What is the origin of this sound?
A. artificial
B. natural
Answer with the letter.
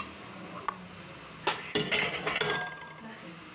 B